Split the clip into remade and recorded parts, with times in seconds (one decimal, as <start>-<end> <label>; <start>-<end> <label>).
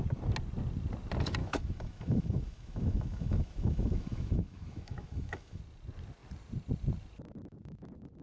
0.0-1.4 recorded; 1.4-5.6 remade; 5.6-8.2 recorded